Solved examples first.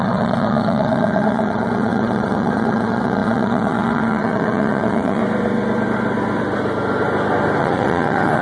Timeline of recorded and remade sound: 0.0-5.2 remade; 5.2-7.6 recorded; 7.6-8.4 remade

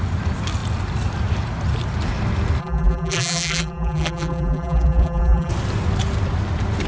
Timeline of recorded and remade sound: 0.0-2.6 recorded; 2.6-5.5 remade; 5.5-6.9 recorded

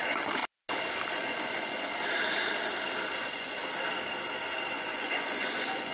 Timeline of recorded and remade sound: 0.0-0.4 remade; 0.4-1.1 recorded; 1.1-1.9 remade; 1.9-3.2 recorded; 3.2-3.6 remade; 3.6-4.7 recorded; 4.7-5.9 remade

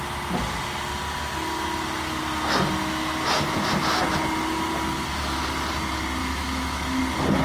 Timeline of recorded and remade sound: 0.0-6.2 recorded; 6.2-7.0 remade; 7.0-7.4 recorded

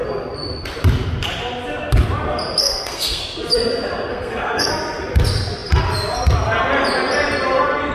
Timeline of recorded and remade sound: 0.0-2.6 recorded; 2.6-3.2 remade; 3.2-4.1 recorded; 4.1-4.7 remade; 4.7-7.9 recorded